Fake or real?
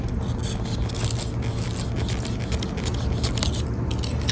real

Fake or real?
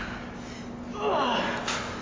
real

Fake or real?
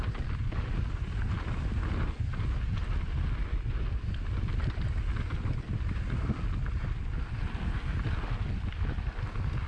real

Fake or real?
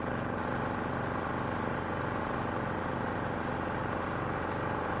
real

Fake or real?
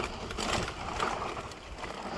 real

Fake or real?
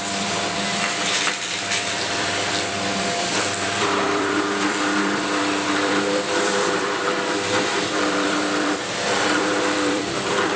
fake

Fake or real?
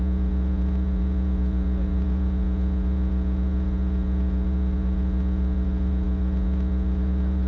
fake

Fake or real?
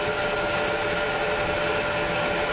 real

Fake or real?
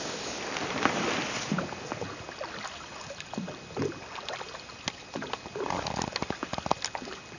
real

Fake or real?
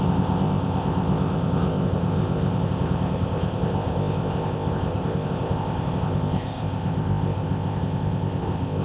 fake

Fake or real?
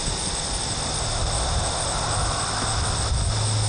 real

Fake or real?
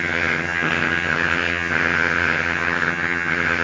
fake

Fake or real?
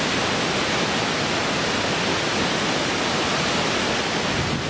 real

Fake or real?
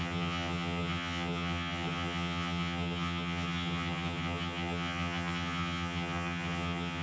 fake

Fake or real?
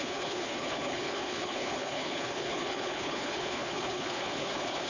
fake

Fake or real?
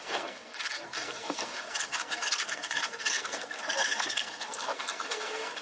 fake